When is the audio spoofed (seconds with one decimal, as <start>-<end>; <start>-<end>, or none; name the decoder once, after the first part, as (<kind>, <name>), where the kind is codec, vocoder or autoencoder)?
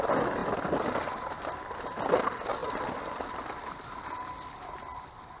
none